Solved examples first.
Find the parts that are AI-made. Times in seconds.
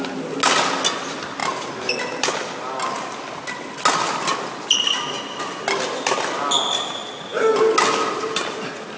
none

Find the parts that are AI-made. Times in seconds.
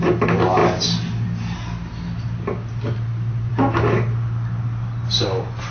none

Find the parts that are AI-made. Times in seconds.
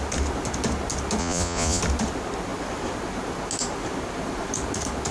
1.2-1.8 (vocoder, Vocos)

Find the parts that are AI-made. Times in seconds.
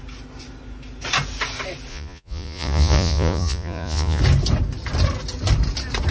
1.9-4.2 (vocoder, Vocos)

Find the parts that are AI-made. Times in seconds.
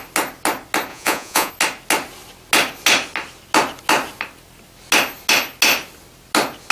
0.9-1.5 (vocoder, Vocos)